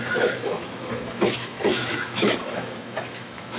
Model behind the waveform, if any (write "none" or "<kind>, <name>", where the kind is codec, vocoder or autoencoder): autoencoder, DAC-VAE